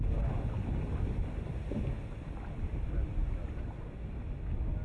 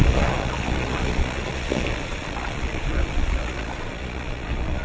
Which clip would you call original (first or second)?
first